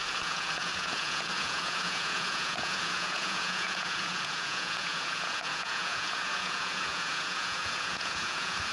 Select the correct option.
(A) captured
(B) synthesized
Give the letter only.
B